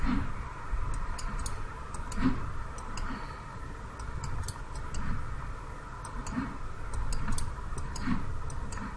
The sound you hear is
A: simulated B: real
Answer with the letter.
B